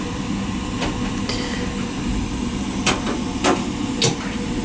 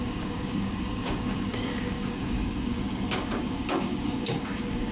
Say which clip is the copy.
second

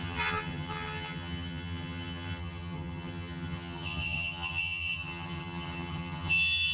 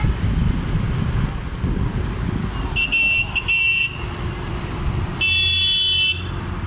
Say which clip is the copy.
first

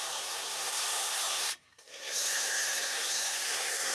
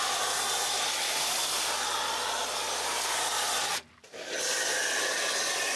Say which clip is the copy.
first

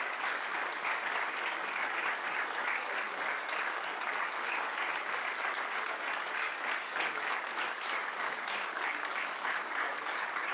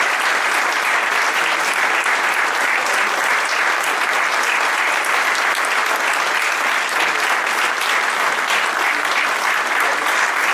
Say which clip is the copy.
first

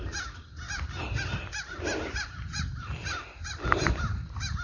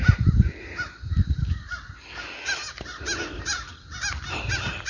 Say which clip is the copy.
first